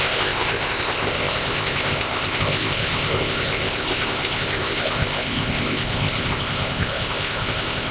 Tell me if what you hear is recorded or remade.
remade